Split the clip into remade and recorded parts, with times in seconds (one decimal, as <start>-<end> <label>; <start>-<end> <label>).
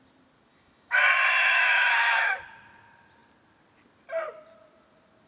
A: 0.0-0.5 recorded; 0.5-1.0 remade; 1.0-1.5 recorded; 1.5-2.3 remade; 2.3-5.3 recorded